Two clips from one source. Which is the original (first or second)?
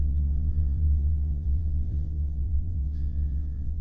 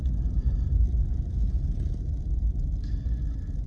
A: second